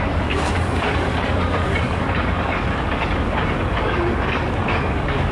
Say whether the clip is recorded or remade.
remade